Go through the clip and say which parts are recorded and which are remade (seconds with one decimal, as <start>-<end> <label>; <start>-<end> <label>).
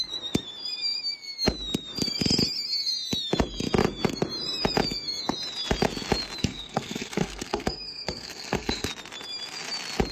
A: 0.0-6.4 recorded; 6.4-8.9 remade; 8.9-10.1 recorded